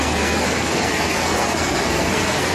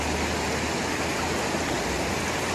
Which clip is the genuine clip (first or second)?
second